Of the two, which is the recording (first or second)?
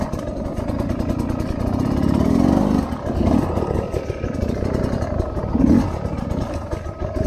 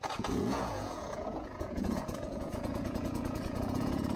first